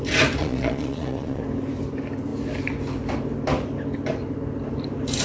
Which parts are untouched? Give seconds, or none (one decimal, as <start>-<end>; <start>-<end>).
0.0-0.4; 1.4-5.2